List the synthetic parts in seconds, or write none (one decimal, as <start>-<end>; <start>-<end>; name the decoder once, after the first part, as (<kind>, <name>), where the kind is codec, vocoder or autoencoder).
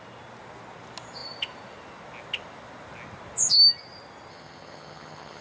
4.3-5.4 (vocoder, HiFi-GAN)